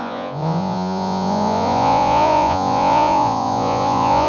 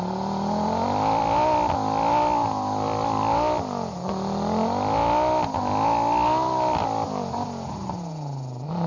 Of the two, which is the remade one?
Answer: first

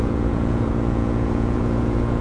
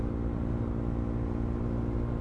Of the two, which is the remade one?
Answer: first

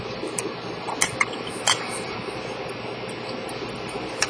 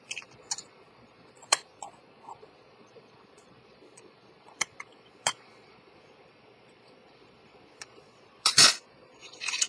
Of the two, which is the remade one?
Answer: second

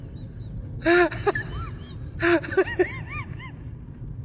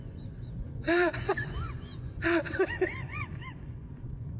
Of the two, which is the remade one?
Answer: second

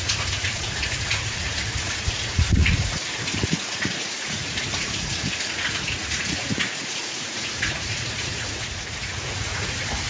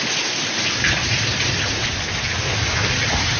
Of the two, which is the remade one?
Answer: first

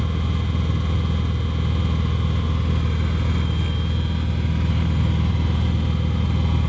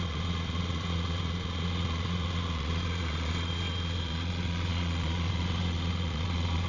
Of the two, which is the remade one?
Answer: second